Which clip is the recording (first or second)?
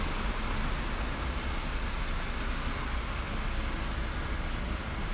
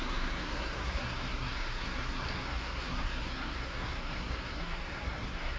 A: first